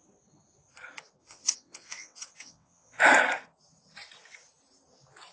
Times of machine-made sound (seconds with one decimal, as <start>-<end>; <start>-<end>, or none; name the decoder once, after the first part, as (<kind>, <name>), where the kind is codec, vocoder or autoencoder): 1.2-3.0 (vocoder, WaveNeXt)